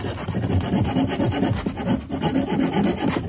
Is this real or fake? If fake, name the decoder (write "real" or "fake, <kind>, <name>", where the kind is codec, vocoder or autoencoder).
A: real